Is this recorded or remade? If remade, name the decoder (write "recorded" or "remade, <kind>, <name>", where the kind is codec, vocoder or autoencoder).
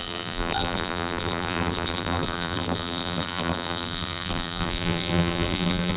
remade, vocoder, BigVGAN v2